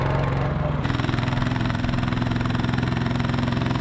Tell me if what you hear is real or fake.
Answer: fake